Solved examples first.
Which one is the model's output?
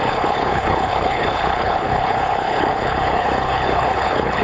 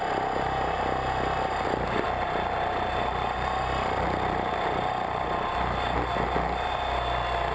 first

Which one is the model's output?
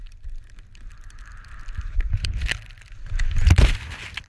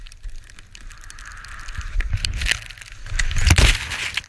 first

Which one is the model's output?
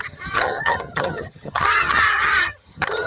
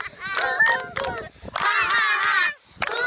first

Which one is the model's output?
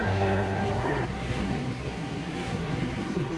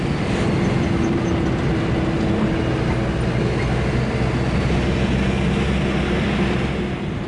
first